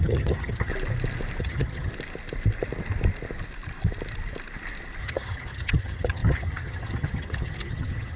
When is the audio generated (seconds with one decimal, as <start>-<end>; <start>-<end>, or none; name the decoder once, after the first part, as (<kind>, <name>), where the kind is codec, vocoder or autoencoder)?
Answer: 0.0-0.7 (vocoder, HiFi-GAN); 1.4-1.9; 5.0-8.2

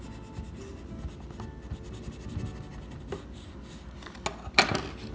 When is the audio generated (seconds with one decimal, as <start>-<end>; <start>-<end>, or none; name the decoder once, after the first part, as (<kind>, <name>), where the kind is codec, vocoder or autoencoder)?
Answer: none

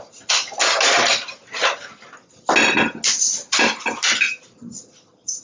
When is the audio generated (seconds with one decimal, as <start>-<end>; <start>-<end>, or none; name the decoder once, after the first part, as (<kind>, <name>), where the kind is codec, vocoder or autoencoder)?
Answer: none

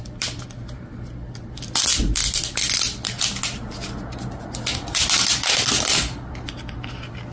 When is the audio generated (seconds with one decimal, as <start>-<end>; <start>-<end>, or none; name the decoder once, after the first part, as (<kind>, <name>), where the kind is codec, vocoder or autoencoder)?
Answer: none

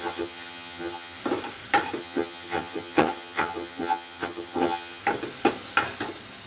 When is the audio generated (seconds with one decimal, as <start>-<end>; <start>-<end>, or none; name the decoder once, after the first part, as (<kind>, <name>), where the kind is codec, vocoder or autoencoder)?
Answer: 0.0-1.2 (vocoder, HiFi-GAN); 2.0-5.0